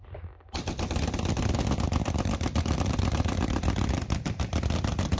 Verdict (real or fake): real